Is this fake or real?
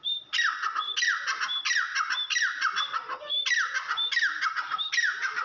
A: real